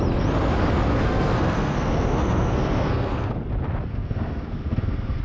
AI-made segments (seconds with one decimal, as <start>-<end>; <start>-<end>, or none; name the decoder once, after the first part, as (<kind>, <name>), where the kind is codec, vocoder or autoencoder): 0.9-3.5 (codec, SNAC); 3.9-5.2